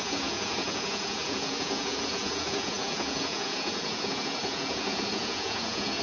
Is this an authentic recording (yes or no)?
no